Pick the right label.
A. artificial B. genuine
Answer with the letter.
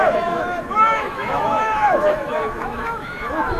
A